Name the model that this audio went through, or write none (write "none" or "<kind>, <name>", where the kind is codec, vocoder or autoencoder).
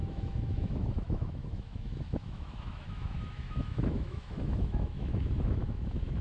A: autoencoder, DAC-VAE